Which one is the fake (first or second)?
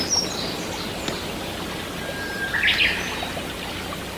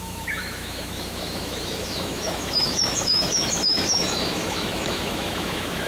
second